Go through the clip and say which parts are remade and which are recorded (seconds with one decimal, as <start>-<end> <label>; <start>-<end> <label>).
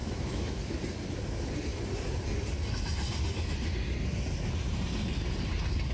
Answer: 0.0-0.6 remade; 0.6-5.9 recorded